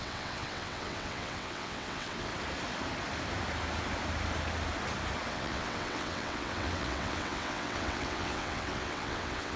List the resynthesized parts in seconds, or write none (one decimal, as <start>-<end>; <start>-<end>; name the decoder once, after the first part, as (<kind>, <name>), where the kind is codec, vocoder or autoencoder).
0.0-2.3 (vocoder, WaveNeXt); 5.3-9.6